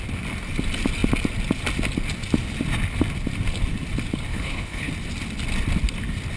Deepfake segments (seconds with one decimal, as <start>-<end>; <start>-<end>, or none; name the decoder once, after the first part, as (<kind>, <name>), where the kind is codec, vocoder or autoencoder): 4.3-4.9 (codec, HILCodec)